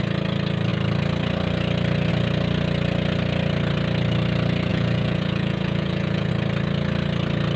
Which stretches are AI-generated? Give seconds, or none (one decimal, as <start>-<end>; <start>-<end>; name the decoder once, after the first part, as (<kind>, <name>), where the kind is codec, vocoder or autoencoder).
4.7-6.3 (vocoder, Vocos)